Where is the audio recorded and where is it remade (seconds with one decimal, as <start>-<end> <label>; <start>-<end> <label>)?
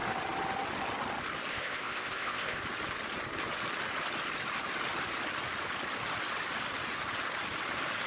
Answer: 0.0-1.5 recorded; 1.5-2.6 remade; 2.6-8.1 recorded